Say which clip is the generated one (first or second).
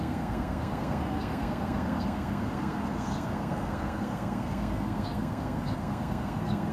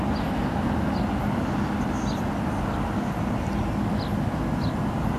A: first